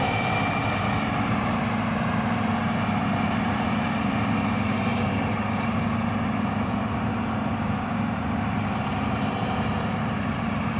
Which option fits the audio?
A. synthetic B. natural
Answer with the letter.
A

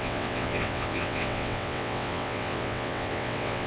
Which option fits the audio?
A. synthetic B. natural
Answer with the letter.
A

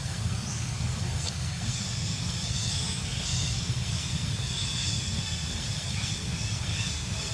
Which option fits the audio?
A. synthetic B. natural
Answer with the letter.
A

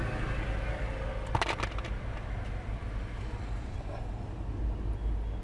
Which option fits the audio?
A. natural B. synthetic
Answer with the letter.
A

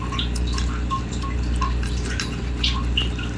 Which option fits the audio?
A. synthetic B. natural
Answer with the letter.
B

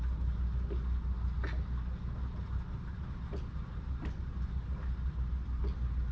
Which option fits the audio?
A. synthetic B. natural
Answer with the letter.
B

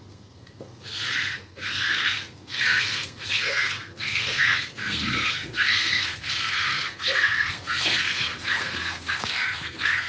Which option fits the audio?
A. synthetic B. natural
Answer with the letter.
A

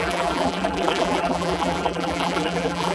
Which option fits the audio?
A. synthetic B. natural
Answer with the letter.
A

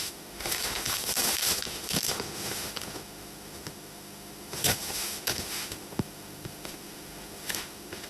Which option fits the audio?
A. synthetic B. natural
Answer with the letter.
A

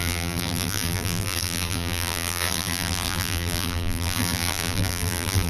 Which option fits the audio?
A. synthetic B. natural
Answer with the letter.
A